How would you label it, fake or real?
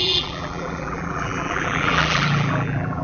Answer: fake